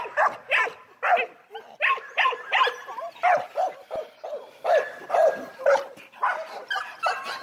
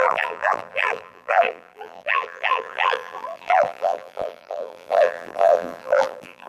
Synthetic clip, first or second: second